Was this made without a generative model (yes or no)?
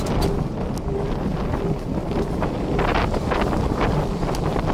yes